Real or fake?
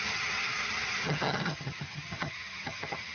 fake